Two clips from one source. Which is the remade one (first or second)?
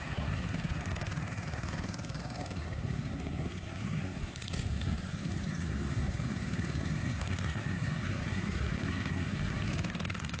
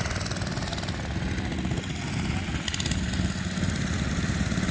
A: first